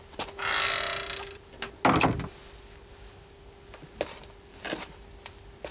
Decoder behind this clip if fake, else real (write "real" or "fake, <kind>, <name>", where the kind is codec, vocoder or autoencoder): real